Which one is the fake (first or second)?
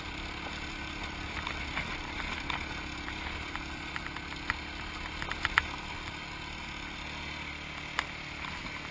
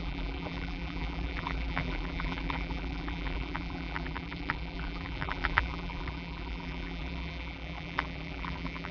second